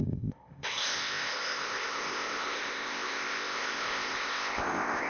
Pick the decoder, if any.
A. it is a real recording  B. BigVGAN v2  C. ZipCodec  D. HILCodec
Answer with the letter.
C